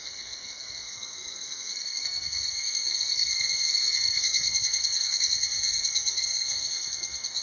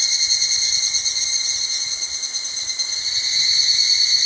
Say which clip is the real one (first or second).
second